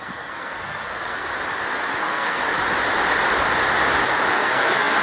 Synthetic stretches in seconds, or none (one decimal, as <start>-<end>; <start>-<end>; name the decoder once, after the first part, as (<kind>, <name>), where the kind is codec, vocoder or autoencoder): 0.0-1.3 (codec, SNAC); 2.0-2.4; 4.3-5.0